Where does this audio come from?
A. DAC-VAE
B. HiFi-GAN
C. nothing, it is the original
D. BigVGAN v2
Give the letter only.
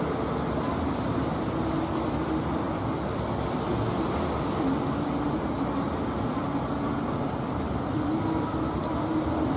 C